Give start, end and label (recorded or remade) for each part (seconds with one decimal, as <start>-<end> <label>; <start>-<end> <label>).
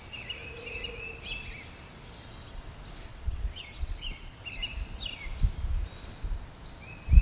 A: 0.0-3.1 recorded; 3.1-4.4 remade; 4.4-7.2 recorded